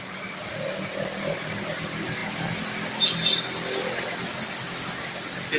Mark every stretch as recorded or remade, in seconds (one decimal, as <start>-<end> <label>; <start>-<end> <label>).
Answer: 0.0-5.6 recorded